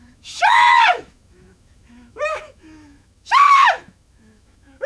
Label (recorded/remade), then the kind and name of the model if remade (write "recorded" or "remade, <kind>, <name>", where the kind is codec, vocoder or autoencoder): remade, autoencoder, DAC-VAE